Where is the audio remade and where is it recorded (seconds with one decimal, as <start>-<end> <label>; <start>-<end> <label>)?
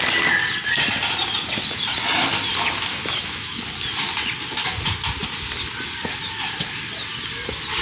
0.0-2.9 recorded; 2.9-3.6 remade; 3.6-7.8 recorded